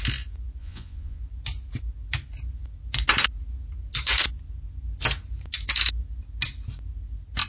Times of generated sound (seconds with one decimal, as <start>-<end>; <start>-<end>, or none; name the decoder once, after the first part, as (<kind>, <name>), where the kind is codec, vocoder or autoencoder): 0.6-1.2 (vocoder, Vocos)